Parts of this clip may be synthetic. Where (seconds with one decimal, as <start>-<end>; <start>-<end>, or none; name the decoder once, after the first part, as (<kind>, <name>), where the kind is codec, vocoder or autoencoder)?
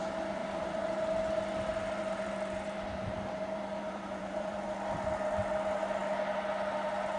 0.4-1.2 (vocoder, BigVGAN v2); 1.7-4.6